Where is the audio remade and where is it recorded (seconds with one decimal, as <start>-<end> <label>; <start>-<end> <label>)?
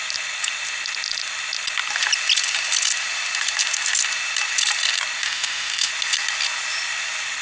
0.0-5.2 recorded; 5.2-5.9 remade; 5.9-7.4 recorded